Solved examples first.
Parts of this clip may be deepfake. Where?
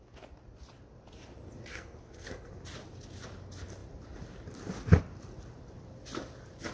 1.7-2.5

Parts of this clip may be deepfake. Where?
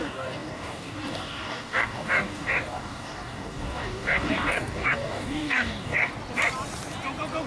0.0-6.1